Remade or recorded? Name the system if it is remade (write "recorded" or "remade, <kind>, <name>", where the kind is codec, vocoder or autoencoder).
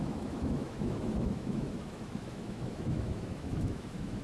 remade, autoencoder, DAC-VAE